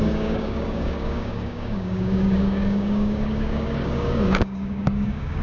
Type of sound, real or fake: fake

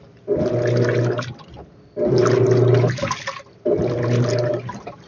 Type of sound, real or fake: real